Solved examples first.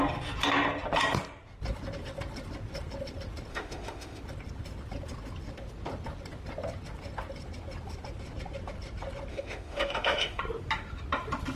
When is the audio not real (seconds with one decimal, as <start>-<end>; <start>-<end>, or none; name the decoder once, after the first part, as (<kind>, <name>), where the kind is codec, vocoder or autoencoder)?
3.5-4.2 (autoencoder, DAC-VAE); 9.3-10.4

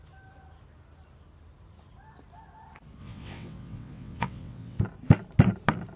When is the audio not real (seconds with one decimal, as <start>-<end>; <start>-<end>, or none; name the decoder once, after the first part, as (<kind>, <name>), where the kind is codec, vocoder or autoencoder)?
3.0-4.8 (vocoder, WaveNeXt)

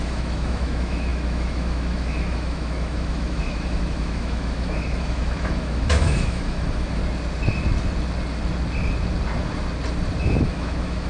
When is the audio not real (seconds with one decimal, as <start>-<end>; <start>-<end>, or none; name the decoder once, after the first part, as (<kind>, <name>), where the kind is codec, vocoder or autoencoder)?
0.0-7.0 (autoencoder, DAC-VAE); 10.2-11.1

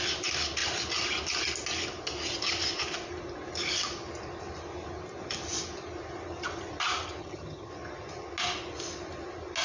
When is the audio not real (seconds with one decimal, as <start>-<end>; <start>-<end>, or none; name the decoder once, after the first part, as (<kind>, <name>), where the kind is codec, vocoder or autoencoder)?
7.2-7.7 (vocoder, HiFi-GAN)